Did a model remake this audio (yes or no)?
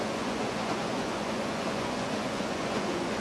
yes